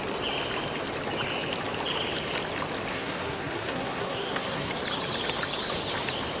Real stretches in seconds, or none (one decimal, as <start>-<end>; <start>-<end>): 0.0-2.9; 4.7-6.4